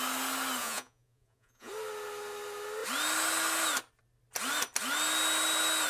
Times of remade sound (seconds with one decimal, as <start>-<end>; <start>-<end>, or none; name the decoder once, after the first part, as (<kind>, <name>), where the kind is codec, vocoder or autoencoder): 0.6-1.7 (vocoder, Vocos)

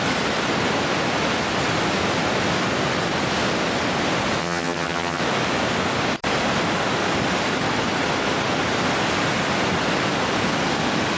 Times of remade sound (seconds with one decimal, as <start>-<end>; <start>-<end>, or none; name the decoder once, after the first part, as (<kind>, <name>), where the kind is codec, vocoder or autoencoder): 4.4-5.2 (vocoder, HiFi-GAN)

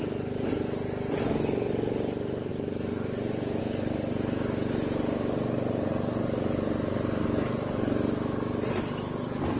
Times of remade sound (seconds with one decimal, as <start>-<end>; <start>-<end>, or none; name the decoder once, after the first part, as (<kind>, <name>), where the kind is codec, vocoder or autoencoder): none

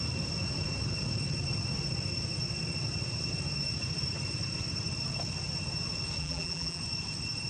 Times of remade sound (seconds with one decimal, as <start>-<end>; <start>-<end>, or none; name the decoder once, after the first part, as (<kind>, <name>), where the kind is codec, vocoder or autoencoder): 6.2-6.8 (vocoder, BigVGAN v2)

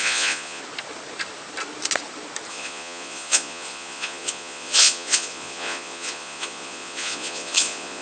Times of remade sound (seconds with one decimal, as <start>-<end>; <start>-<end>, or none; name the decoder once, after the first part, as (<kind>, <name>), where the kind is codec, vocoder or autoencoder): 0.0-0.6 (vocoder, Vocos); 2.5-8.0

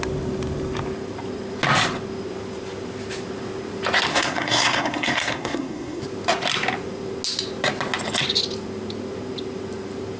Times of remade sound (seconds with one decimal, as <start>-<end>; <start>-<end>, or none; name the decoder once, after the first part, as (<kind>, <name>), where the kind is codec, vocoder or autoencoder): 4.1-6.0 (codec, SNAC)